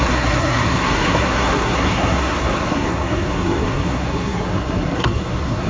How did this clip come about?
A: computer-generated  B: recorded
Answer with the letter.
A